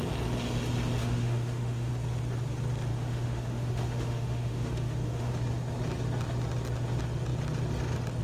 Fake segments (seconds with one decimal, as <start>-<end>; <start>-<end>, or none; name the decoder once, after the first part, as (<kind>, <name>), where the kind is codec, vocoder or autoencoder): 1.0-1.9 (autoencoder, DAC-VAE); 2.9-5.3